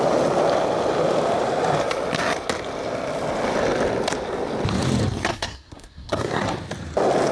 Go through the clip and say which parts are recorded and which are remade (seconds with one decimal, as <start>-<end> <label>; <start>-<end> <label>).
0.0-5.3 recorded; 5.3-6.4 remade; 6.4-7.3 recorded